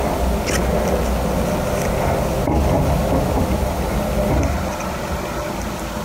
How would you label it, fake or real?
real